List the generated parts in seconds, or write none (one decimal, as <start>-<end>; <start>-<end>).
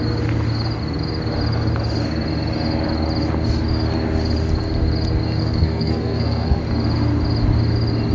5.4-6.6